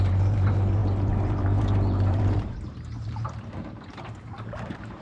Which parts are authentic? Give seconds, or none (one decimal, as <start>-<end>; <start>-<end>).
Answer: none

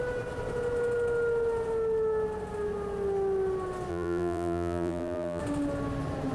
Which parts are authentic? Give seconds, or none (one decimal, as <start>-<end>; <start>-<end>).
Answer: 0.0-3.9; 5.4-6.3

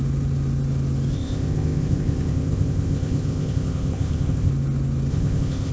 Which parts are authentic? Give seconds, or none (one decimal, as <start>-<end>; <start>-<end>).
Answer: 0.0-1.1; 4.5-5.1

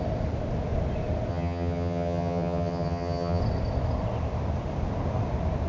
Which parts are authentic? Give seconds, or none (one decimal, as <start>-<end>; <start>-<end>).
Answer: 0.0-1.3; 3.4-5.7

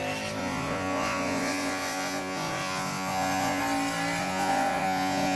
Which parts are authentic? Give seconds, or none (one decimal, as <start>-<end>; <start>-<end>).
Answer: 0.0-0.4; 3.6-4.2